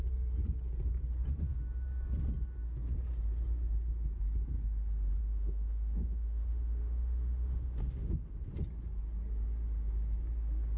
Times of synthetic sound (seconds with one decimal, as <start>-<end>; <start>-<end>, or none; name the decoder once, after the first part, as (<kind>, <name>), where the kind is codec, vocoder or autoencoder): 5.2-8.5 (autoencoder, DAC-VAE)